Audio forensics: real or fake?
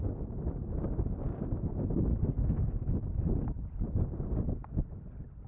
real